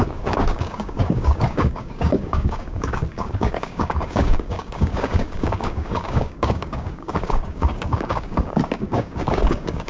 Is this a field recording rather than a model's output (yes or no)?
no